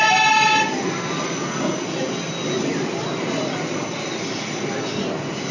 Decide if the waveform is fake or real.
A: real